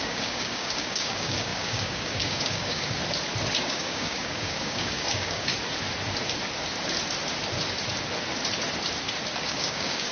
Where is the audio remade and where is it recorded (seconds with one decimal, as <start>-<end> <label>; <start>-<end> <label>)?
0.0-3.0 remade; 3.0-3.6 recorded; 3.6-5.5 remade; 5.5-9.4 recorded; 9.4-10.1 remade